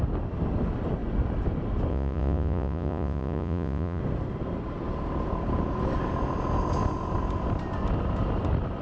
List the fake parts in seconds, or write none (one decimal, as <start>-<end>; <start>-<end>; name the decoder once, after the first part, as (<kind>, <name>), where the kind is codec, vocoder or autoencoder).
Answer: 1.9-4.0 (vocoder, Vocos)